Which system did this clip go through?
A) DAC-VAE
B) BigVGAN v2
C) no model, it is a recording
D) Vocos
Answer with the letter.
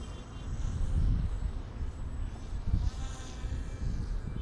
C